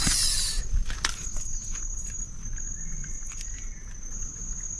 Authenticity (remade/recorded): recorded